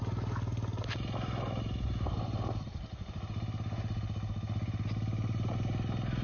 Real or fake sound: real